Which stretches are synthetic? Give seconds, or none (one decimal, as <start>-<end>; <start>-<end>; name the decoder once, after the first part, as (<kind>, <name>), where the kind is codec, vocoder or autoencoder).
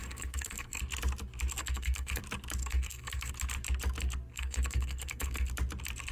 0.0-0.8 (codec, SNAC); 1.6-2.2; 2.6-3.3; 4.3-5.5